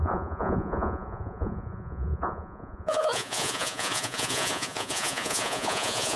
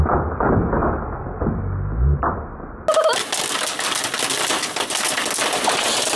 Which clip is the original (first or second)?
second